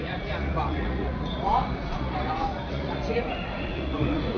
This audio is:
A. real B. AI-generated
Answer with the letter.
B